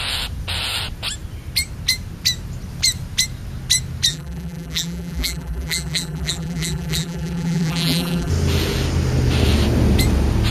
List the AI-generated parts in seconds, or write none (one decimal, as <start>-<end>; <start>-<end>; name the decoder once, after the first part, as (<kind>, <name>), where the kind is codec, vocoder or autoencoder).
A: 4.1-8.3 (vocoder, BigVGAN v2)